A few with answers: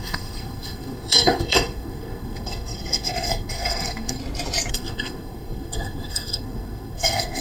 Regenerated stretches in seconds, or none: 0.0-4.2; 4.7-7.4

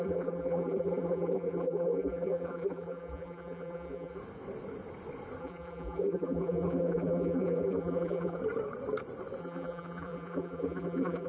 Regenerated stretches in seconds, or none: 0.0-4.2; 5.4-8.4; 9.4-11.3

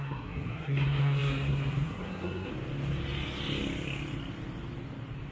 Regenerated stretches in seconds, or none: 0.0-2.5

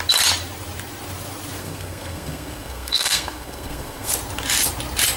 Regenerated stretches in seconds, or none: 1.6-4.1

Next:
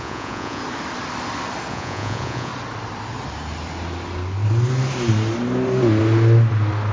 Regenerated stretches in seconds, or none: 0.0-0.6; 1.7-2.5